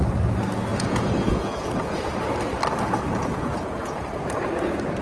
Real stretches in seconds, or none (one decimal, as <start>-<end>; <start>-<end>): 0.0-0.7; 2.1-3.2; 4.1-5.0